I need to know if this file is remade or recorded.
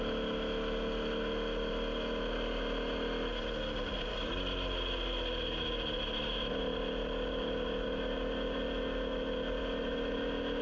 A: recorded